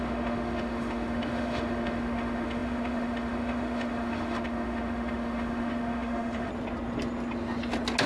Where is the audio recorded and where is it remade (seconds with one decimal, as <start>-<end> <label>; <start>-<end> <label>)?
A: 0.0-6.5 remade; 6.5-8.1 recorded